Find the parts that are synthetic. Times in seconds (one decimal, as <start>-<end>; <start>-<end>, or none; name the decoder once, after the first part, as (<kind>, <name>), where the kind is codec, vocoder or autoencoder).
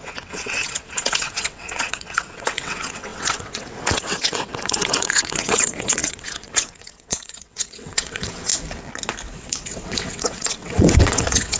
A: 0.0-8.5 (vocoder, WaveNeXt); 9.4-11.6